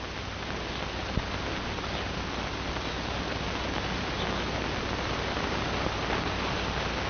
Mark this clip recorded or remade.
recorded